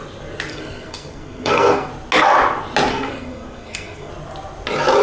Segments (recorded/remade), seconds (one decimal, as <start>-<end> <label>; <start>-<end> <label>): 0.0-0.5 recorded; 0.5-1.9 remade; 1.9-2.9 recorded; 2.9-4.1 remade; 4.1-5.0 recorded